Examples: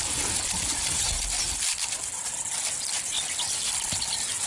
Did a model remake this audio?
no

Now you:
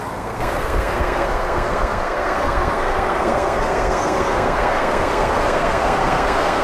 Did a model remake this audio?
yes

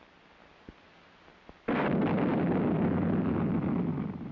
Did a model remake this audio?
no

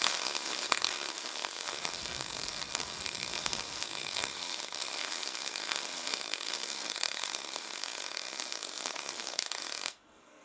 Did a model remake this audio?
yes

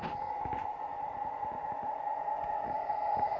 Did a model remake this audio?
no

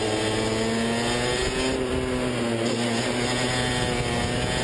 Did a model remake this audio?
no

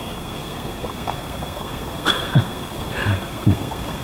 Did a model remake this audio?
yes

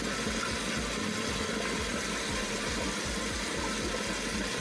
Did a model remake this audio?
no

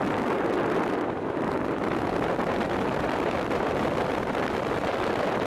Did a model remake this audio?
no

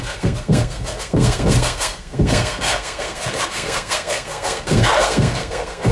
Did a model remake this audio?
yes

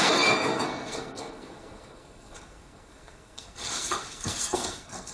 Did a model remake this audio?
yes